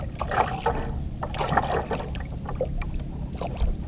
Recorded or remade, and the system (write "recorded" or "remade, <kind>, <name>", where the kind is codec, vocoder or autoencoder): recorded